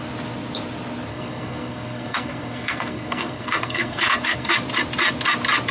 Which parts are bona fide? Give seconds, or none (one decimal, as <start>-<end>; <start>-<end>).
0.0-1.1; 4.5-5.7